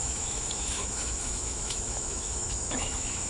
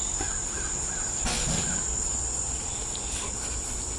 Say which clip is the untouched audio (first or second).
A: second